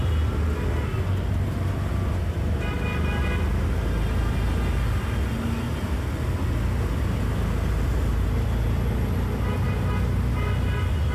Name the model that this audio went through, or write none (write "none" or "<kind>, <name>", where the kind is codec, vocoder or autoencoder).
none